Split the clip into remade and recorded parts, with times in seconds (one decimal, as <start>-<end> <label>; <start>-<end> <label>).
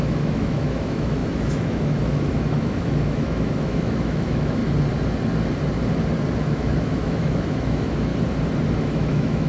0.0-4.6 remade; 4.6-6.4 recorded; 6.4-8.1 remade; 8.1-8.8 recorded; 8.8-9.5 remade